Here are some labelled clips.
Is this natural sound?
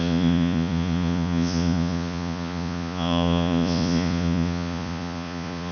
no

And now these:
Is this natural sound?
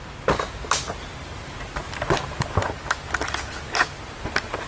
yes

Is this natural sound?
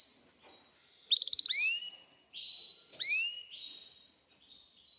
yes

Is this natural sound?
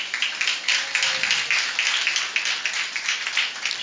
yes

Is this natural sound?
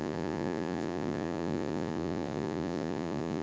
no